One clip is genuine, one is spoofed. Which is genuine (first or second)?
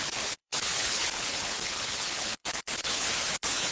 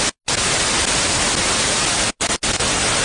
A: second